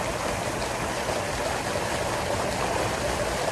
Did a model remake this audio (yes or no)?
no